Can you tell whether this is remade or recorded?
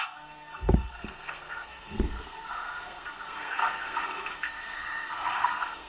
remade